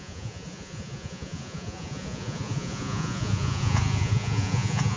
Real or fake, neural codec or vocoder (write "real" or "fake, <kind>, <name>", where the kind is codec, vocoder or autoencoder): fake, vocoder, Vocos